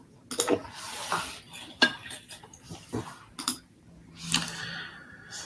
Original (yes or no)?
yes